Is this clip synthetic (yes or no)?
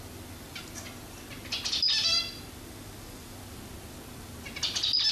no